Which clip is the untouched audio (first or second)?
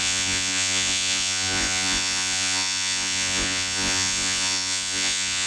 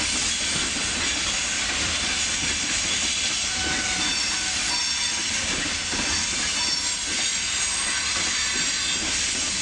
second